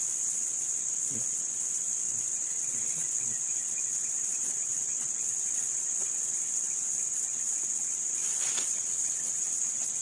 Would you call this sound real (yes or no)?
no